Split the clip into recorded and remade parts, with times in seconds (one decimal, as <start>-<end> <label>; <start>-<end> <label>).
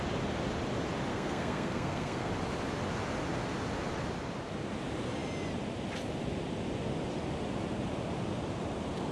0.0-1.1 recorded; 1.1-2.3 remade; 2.3-9.1 recorded